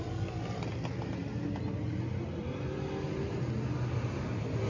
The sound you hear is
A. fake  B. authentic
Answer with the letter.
B